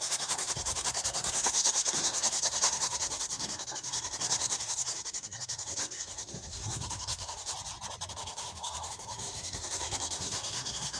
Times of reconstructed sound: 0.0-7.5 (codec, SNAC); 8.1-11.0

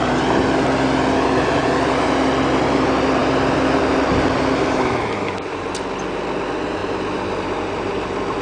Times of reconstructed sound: none

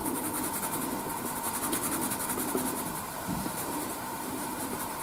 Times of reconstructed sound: 3.0-5.0 (vocoder, BigVGAN v2)

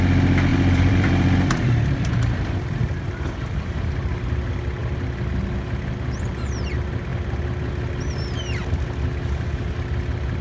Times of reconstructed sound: 0.5-4.1 (vocoder, BigVGAN v2); 7.1-7.7

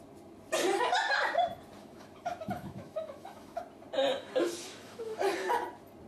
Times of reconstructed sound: 1.8-3.6 (autoencoder, DAC-VAE); 4.1-5.5

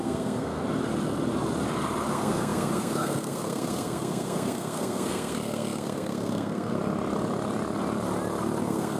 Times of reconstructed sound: 0.0-0.6 (codec, SNAC); 2.1-6.8; 8.6-9.0